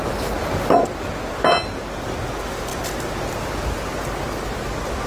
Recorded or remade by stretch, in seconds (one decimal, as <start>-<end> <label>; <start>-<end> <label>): 0.0-5.1 recorded